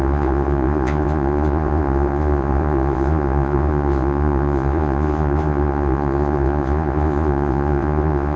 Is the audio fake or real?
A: fake